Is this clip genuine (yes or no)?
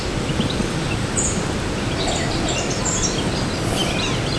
yes